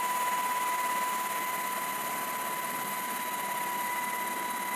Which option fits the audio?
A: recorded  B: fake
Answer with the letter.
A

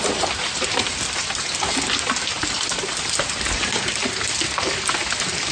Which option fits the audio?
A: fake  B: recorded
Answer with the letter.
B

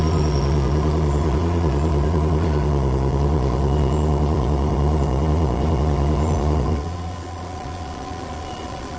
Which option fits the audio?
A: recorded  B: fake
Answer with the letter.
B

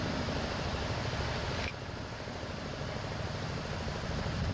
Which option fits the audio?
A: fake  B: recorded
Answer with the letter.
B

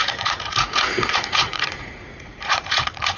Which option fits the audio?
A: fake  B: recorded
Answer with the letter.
A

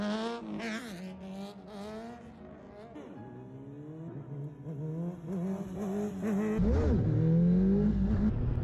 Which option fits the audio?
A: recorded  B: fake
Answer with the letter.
A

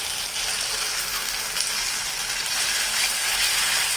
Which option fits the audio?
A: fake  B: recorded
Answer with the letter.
B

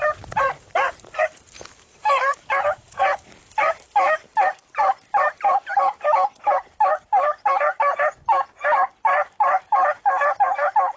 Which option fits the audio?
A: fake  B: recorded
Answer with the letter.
A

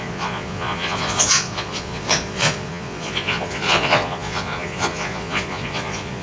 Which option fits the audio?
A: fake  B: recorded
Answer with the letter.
A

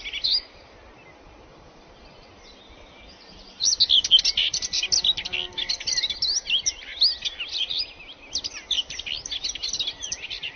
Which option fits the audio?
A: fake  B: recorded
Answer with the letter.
B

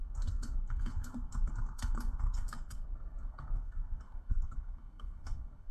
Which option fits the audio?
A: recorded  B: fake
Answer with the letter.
B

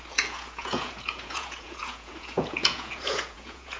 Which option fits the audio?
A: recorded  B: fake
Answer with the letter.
B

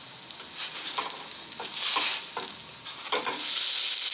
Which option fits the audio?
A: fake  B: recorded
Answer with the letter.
B